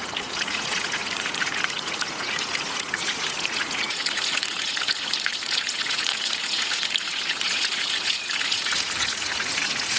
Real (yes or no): no